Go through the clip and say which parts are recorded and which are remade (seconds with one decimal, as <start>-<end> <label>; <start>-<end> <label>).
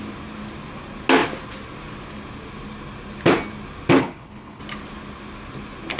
0.0-4.0 recorded; 4.0-4.6 remade; 4.6-6.0 recorded